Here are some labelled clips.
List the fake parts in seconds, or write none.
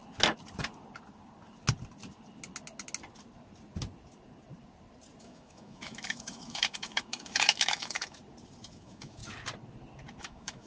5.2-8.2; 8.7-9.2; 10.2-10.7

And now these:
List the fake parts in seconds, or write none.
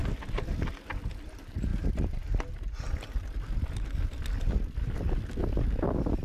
none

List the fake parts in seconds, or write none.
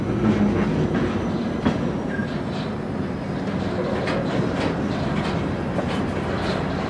none